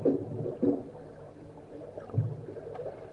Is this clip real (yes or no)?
yes